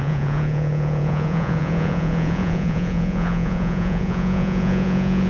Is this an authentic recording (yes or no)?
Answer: no